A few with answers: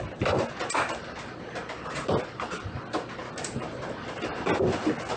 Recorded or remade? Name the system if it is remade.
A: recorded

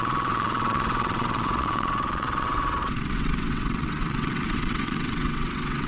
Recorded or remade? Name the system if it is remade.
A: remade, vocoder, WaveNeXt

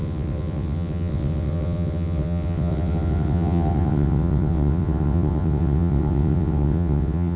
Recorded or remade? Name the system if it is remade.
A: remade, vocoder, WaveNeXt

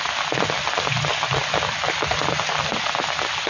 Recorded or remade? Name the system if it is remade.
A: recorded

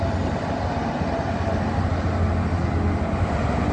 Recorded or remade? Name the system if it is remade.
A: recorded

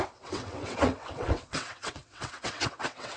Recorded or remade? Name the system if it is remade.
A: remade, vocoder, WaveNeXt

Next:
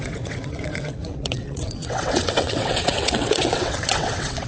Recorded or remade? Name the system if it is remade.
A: remade, vocoder, WaveNeXt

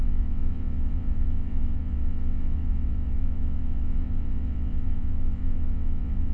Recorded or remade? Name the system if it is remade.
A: remade, vocoder, WaveNeXt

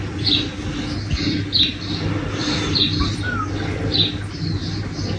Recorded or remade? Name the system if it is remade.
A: recorded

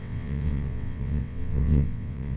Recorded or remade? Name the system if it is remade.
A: remade, vocoder, WaveNeXt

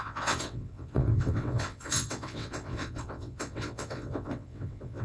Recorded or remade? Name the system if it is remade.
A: remade, vocoder, WaveNeXt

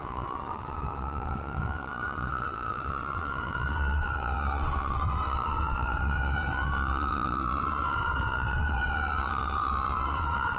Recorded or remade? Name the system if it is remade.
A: remade, vocoder, WaveNeXt